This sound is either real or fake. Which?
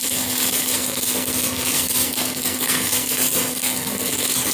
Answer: fake